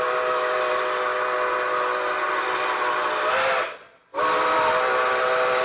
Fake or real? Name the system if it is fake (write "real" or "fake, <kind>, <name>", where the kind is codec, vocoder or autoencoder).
real